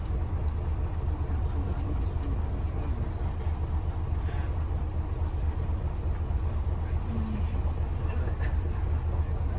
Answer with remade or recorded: recorded